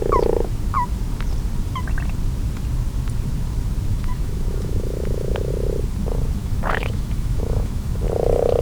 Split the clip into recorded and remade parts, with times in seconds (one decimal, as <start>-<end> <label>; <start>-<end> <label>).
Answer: 0.0-3.9 recorded; 3.9-5.5 remade; 5.5-6.4 recorded; 6.4-8.0 remade; 8.0-8.6 recorded